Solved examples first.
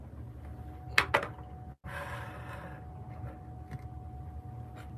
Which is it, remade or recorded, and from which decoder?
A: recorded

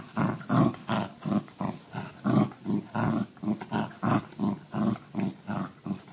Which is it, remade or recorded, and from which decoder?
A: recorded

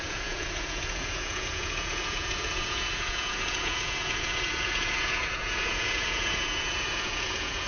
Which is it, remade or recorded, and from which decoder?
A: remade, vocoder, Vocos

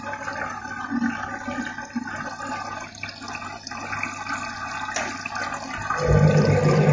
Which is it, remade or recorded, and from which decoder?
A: recorded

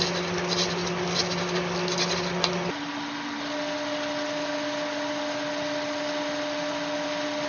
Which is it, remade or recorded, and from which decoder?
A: recorded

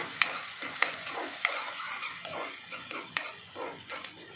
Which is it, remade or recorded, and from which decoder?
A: remade, vocoder, Vocos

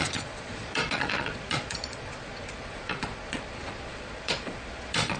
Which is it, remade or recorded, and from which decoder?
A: remade, vocoder, Vocos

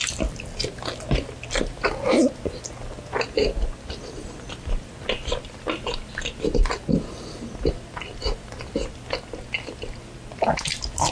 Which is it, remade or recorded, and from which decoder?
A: recorded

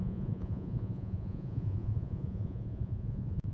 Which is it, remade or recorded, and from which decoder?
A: remade, vocoder, Vocos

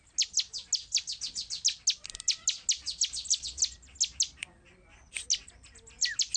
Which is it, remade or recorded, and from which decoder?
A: recorded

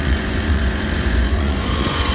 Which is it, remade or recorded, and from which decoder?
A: remade, vocoder, Vocos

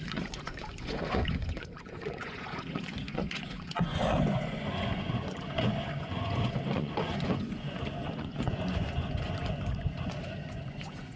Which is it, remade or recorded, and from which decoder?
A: remade, vocoder, Vocos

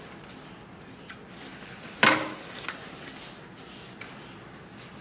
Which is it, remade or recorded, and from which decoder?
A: recorded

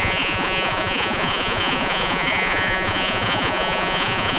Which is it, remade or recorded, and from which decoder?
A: remade, vocoder, Vocos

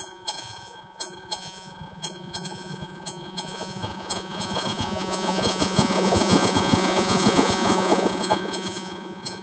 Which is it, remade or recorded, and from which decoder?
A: remade, vocoder, Vocos